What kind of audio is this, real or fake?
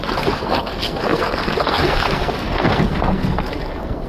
fake